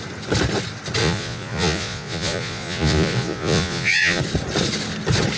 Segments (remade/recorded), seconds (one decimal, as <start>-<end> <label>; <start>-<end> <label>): 0.0-1.0 recorded; 1.0-4.2 remade; 4.2-5.4 recorded